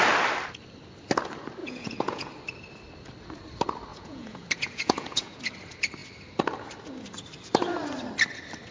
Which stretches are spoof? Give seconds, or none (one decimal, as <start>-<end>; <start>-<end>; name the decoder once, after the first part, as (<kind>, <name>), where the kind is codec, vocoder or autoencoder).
1.6-2.3 (vocoder, Vocos); 3.9-5.4